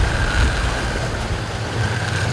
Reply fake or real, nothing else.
real